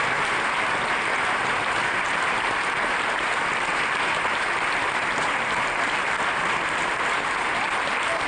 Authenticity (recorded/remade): remade